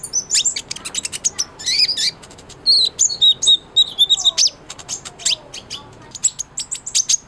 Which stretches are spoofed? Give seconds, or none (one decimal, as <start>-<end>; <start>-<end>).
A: none